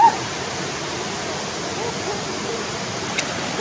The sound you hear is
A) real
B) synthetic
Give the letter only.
A